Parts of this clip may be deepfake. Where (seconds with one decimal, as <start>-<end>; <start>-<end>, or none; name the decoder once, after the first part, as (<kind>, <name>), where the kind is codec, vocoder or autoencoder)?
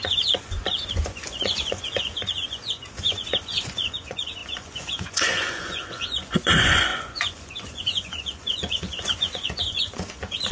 0.0-10.5 (vocoder, Vocos)